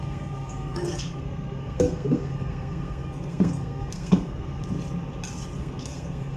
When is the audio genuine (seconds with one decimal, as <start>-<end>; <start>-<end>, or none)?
4.6-5.6